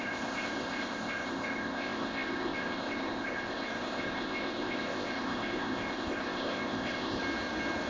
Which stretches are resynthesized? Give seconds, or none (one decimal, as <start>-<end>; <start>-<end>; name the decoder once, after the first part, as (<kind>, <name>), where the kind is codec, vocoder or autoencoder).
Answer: 0.0-7.2 (codec, ZipCodec)